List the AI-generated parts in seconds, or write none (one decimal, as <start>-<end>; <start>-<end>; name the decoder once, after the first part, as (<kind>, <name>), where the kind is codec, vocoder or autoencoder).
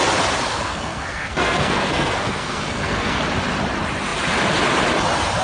0.5-3.2 (codec, SNAC)